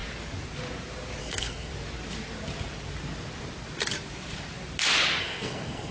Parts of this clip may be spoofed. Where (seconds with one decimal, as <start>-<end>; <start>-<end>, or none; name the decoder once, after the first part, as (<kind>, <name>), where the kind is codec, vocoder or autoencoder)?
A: 1.2-1.7 (codec, SNAC); 5.2-5.9